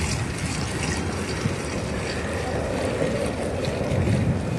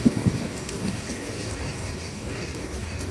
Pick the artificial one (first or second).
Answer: second